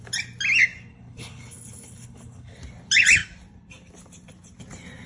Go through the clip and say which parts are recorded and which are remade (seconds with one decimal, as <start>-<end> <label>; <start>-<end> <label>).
0.0-0.9 recorded; 0.9-2.6 remade; 2.6-5.1 recorded